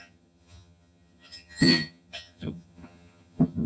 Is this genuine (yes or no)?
no